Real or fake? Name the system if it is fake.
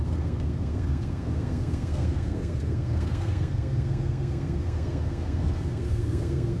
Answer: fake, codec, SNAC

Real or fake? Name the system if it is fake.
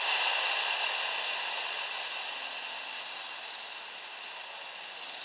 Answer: real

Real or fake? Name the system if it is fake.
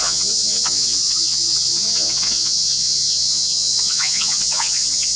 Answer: fake, vocoder, Vocos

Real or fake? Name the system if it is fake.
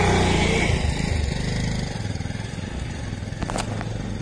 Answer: real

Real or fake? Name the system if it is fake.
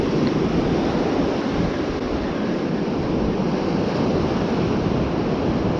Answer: real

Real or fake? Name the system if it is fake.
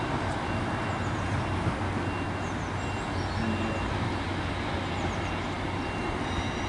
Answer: real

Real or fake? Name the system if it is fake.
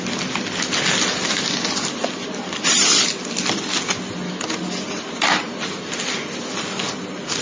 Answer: real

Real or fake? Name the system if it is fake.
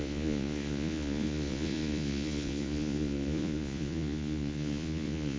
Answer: fake, vocoder, Vocos